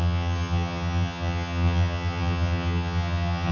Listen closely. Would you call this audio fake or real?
fake